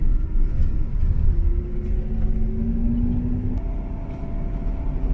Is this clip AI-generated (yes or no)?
no